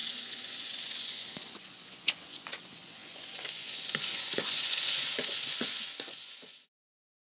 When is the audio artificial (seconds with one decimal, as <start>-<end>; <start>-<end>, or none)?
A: 0.0-7.2